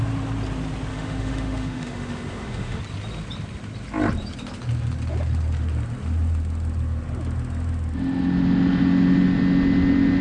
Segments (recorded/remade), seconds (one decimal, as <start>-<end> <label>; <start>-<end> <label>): 0.0-0.9 recorded; 0.9-2.8 remade; 2.8-10.2 recorded